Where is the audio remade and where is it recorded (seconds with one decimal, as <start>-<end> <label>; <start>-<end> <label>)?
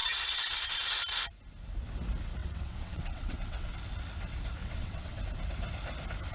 0.0-0.9 remade; 0.9-2.4 recorded; 2.4-3.7 remade; 3.7-4.6 recorded; 4.6-5.2 remade; 5.2-6.3 recorded